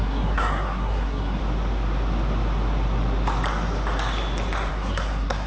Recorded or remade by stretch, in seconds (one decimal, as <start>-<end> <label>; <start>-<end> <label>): 0.0-1.4 remade; 1.4-4.7 recorded; 4.7-5.5 remade